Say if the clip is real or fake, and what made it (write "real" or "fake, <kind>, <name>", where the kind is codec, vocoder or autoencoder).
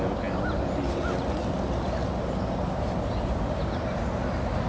real